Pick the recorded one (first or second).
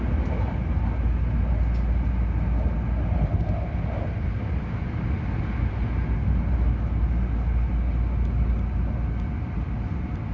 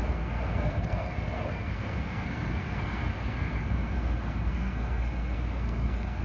first